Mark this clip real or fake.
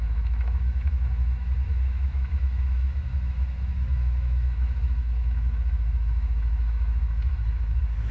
fake